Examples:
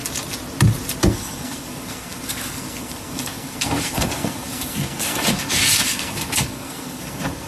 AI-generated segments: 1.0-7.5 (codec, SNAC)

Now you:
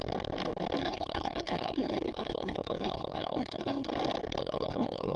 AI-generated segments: 0.8-3.9 (codec, SNAC); 4.4-5.2

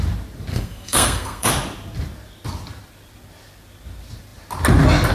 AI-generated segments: 0.5-1.5 (codec, SNAC)

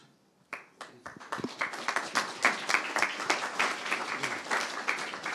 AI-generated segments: none

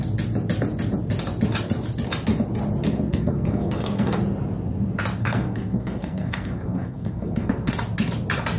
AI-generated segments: 3.1-4.2 (codec, SNAC); 5.2-7.7